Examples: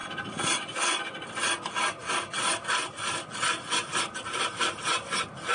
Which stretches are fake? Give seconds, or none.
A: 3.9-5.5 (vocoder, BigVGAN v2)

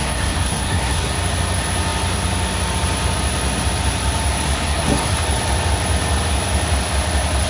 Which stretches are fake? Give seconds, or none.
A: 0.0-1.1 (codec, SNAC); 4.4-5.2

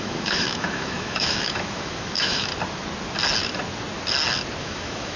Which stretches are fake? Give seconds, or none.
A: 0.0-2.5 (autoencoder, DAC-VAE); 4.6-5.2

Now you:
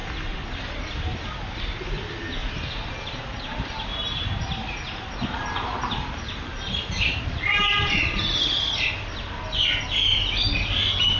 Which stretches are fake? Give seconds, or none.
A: 0.0-1.2 (vocoder, BigVGAN v2); 2.4-5.4; 6.5-7.9

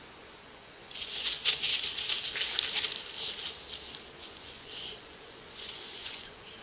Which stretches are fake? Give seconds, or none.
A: 0.0-1.7 (vocoder, Vocos); 4.2-6.6

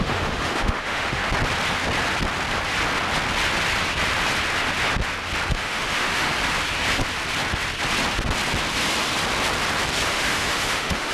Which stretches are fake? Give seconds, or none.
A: 0.0-1.2 (autoencoder, DAC-VAE); 5.5-6.3; 10.1-11.1

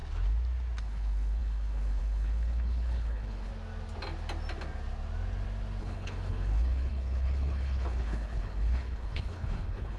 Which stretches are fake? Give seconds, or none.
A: 0.8-3.5 (codec, HILCodec); 5.8-10.0

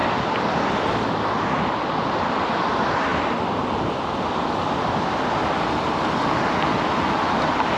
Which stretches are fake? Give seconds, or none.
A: none